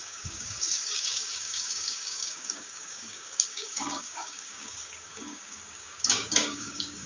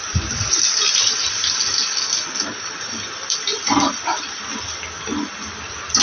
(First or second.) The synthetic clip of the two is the first